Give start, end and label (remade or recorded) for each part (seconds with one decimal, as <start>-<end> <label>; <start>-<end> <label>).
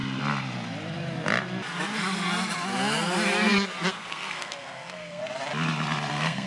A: 0.0-3.9 recorded; 3.9-5.2 remade; 5.2-6.1 recorded; 6.1-6.5 remade